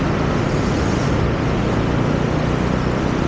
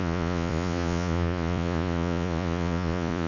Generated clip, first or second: second